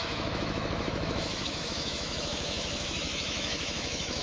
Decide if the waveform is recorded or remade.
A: remade